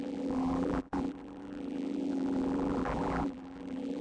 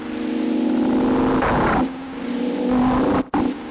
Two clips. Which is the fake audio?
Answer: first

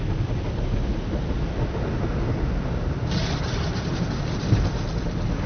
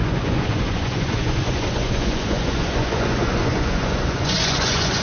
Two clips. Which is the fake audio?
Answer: second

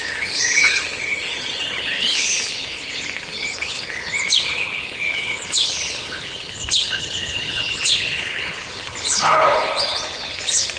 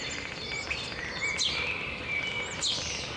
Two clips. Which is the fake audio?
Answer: first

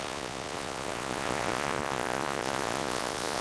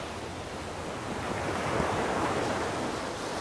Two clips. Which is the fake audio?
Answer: first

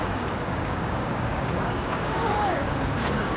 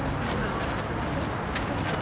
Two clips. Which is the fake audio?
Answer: first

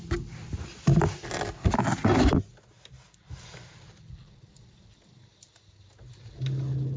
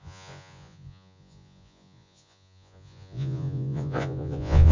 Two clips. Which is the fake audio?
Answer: second